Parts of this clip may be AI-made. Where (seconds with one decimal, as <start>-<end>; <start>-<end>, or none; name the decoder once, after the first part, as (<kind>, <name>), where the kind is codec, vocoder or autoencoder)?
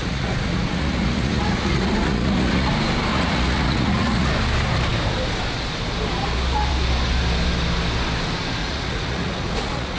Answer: 0.0-2.7 (vocoder, Vocos); 3.1-4.3; 8.6-10.0